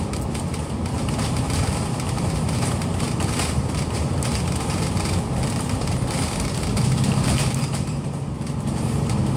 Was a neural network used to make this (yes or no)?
yes